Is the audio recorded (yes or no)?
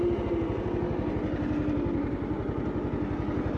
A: yes